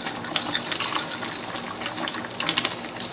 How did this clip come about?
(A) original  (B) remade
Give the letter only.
A